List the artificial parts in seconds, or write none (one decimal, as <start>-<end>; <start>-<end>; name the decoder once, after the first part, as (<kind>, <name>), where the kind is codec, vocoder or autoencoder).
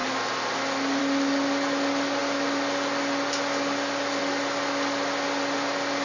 none